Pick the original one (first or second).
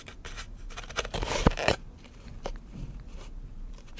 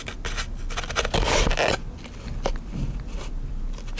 second